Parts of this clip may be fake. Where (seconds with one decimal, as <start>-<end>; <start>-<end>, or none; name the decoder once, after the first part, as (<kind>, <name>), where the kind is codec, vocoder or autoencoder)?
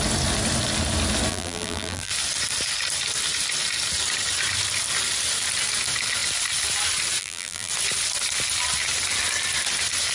1.3-2.1 (vocoder, BigVGAN v2); 7.2-7.7